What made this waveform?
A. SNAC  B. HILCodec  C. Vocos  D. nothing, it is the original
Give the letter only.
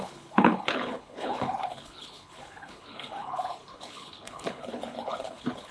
B